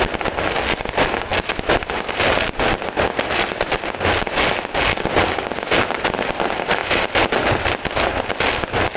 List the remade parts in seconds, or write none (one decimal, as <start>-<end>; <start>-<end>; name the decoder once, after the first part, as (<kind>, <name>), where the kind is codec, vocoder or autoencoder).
none